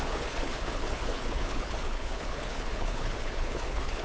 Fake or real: fake